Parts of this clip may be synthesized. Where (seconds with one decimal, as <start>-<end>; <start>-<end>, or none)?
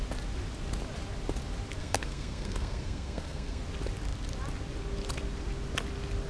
1.8-3.6